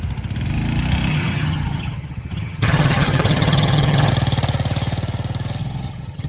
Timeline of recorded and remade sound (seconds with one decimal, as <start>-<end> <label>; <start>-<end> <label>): 0.0-1.1 recorded; 1.1-4.1 remade; 4.1-5.6 recorded; 5.6-6.3 remade